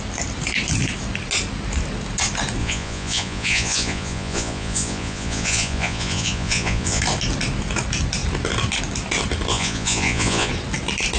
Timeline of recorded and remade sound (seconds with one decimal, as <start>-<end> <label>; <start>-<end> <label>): 0.0-2.6 recorded; 2.6-7.0 remade; 7.0-9.5 recorded; 9.5-10.5 remade; 10.5-11.2 recorded